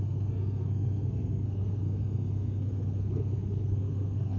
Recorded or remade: remade